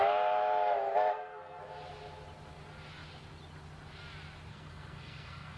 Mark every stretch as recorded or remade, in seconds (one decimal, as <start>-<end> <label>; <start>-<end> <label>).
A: 0.0-1.1 recorded; 1.1-1.6 remade; 1.6-4.5 recorded; 4.5-5.6 remade